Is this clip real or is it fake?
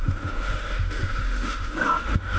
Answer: fake